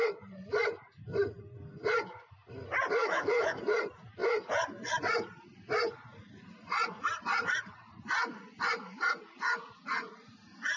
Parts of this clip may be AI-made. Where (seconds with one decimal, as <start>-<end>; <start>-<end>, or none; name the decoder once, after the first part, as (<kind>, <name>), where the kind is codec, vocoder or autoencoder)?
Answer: 3.0-3.6 (autoencoder, DAC-VAE)